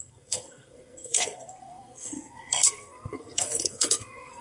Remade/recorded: remade